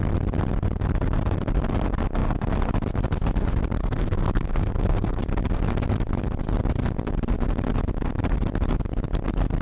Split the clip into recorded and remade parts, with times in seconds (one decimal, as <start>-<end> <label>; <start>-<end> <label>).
0.0-3.8 recorded; 3.8-5.2 remade; 5.2-9.6 recorded